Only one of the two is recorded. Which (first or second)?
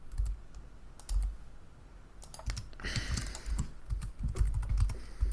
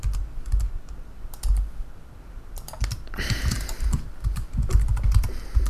first